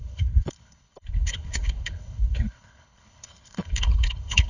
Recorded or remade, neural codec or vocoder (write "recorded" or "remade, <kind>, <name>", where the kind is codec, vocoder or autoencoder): remade, codec, HILCodec